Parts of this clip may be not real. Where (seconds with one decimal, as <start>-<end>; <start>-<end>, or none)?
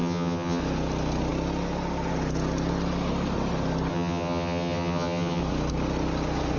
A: 0.0-0.6; 3.9-5.4